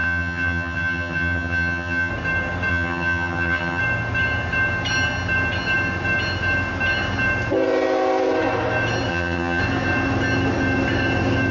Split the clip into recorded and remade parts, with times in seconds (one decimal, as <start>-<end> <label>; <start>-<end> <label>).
0.0-2.1 remade; 2.1-2.7 recorded; 2.7-3.8 remade; 3.8-9.1 recorded; 9.1-9.6 remade; 9.6-11.5 recorded